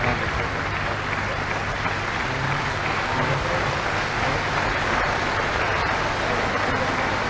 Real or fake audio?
real